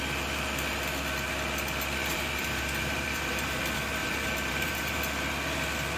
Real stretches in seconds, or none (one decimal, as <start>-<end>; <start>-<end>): 0.0-2.0; 3.6-4.0; 5.0-6.0